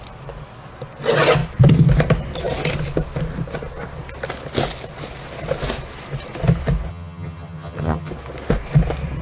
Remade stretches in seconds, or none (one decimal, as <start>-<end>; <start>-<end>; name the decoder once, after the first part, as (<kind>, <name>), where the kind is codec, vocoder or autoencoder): 6.9-8.1 (vocoder, HiFi-GAN)